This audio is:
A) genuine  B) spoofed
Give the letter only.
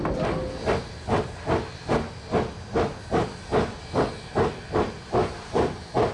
A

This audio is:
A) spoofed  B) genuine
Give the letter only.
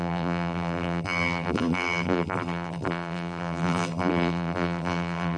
A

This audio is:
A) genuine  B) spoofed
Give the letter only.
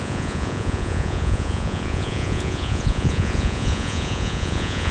B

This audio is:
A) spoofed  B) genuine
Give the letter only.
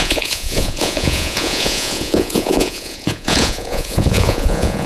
A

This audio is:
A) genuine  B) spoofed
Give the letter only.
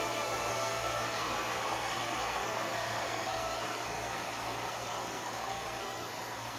B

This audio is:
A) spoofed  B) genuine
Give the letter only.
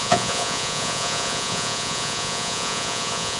A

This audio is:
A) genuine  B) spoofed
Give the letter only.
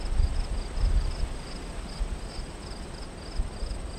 A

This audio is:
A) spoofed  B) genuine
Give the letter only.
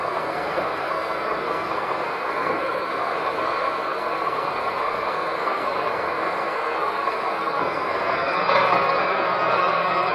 A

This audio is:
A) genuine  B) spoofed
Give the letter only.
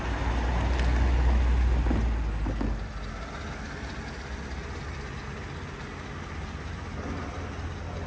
A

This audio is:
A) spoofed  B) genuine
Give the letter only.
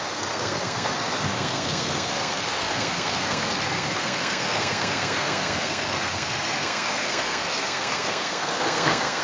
A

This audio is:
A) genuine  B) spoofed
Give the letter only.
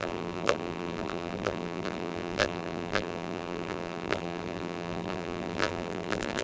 B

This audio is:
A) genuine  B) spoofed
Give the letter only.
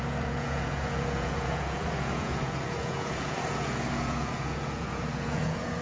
B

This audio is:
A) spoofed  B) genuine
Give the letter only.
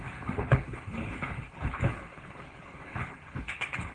A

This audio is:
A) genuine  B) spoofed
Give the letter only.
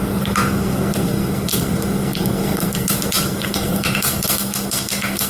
B